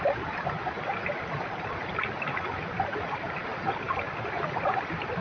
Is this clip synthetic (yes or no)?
no